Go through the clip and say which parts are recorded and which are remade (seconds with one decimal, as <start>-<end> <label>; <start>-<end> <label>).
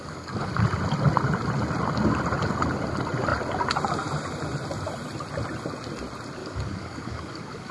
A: 0.0-0.5 remade; 0.5-6.4 recorded; 6.4-7.7 remade